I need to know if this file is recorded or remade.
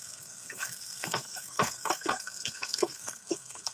remade